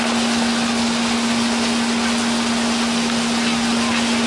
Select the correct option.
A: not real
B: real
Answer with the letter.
B